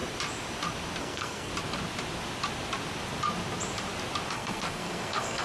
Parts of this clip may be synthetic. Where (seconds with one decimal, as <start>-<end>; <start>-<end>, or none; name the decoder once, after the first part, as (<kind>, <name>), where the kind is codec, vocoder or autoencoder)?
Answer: 1.0-1.5 (codec, SNAC); 4.3-5.4